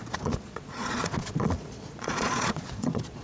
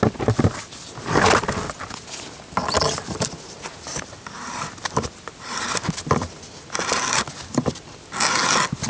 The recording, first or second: second